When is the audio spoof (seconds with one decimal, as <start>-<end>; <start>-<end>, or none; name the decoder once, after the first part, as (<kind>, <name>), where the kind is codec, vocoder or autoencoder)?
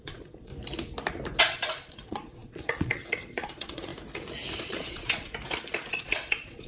0.0-0.5 (vocoder, Vocos); 1.4-3.9; 4.6-5.3; 5.9-6.7